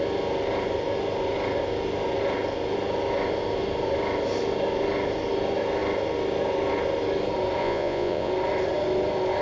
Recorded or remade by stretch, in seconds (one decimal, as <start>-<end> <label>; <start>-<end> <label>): 0.0-7.6 recorded; 7.6-8.3 remade; 8.3-9.4 recorded